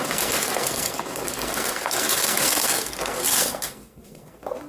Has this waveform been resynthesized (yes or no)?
yes